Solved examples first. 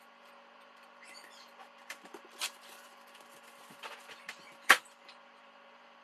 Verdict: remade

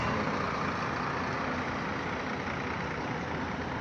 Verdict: recorded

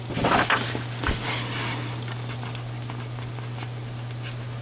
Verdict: recorded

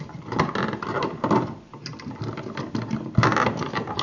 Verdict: recorded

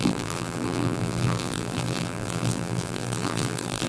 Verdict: remade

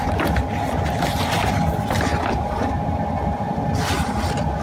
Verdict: recorded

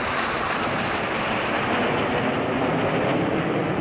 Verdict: recorded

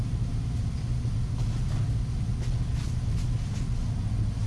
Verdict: recorded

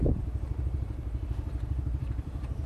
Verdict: remade